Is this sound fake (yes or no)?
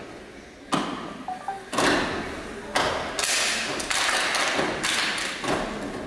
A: no